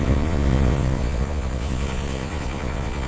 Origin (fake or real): fake